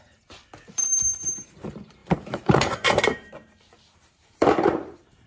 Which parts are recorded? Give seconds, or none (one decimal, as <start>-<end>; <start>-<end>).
0.4-1.3